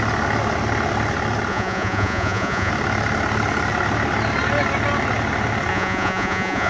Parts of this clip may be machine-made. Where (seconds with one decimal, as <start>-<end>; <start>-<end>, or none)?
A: 1.5-2.7; 5.7-6.7